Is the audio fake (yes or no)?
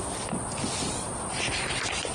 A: no